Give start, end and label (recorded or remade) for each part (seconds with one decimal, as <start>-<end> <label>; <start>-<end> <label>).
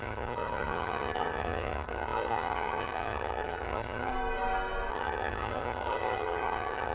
0.0-4.1 remade; 4.1-4.9 recorded; 4.9-6.9 remade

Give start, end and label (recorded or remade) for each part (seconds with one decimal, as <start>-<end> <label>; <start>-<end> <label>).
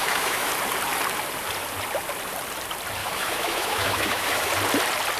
0.0-0.5 remade; 0.5-3.0 recorded; 3.0-4.5 remade; 4.5-5.2 recorded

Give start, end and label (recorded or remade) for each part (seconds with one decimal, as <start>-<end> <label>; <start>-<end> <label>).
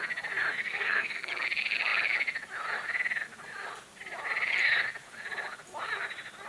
0.0-0.6 recorded; 0.6-1.3 remade; 1.3-6.5 recorded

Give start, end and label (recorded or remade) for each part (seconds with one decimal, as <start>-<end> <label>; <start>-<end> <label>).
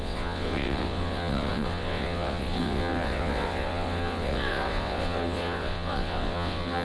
0.0-6.8 remade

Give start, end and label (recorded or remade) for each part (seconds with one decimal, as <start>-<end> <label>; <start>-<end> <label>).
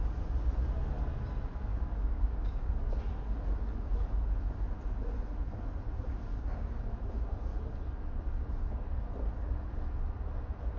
0.0-1.7 recorded; 1.7-2.7 remade; 2.7-6.3 recorded; 6.3-6.8 remade; 6.8-10.8 recorded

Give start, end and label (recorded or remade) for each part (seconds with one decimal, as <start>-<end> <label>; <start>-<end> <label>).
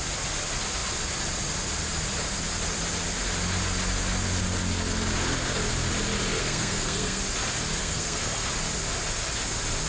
0.0-6.4 recorded; 6.4-7.2 remade; 7.2-7.8 recorded; 7.8-8.5 remade; 8.5-9.9 recorded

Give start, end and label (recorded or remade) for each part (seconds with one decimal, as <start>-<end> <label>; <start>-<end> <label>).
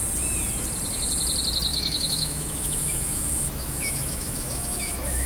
0.0-1.7 recorded; 1.7-5.3 remade